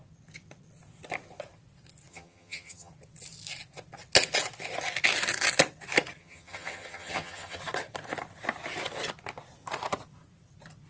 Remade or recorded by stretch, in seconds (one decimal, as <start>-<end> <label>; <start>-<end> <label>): 0.0-2.1 recorded; 2.1-2.9 remade; 2.9-6.2 recorded; 6.2-7.6 remade; 7.6-10.9 recorded